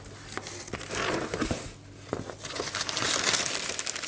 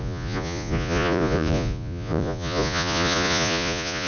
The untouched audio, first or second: first